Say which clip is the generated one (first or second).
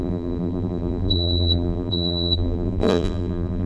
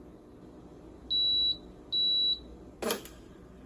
first